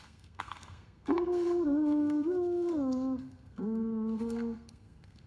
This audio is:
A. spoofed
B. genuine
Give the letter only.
A